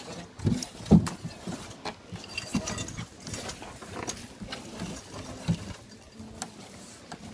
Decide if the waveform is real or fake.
real